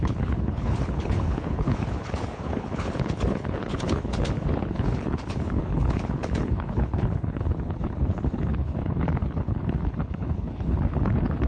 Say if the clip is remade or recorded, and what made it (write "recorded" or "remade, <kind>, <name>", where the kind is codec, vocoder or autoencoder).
remade, codec, HILCodec